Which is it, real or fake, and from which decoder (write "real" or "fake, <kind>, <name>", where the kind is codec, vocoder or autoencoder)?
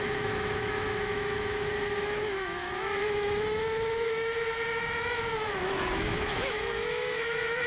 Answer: fake, autoencoder, DAC-VAE